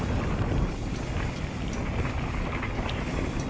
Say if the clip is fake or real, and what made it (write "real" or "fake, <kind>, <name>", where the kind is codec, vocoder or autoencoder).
real